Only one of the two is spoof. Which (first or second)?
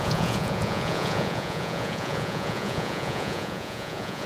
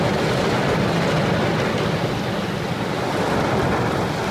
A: first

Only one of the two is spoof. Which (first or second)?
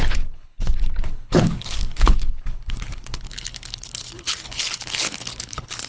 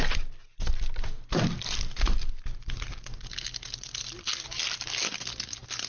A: first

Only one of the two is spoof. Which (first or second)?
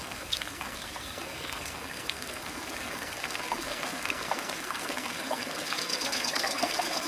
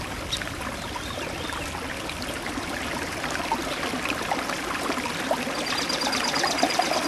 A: first